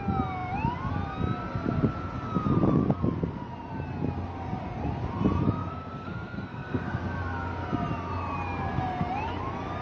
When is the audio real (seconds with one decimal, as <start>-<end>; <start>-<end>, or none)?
0.0-5.6; 7.0-9.8